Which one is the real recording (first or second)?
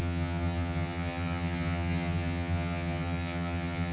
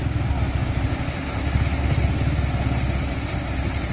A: second